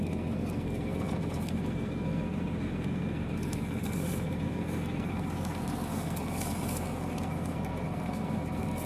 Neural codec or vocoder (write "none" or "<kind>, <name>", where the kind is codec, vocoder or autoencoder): codec, SNAC